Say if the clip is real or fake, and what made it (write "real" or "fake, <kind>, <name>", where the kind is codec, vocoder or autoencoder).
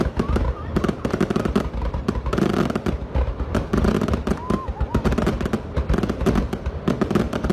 real